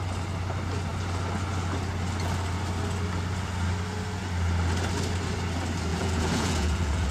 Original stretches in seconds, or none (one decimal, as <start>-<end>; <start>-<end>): 0.0-5.9